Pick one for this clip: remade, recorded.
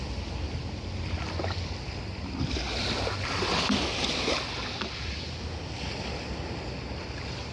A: recorded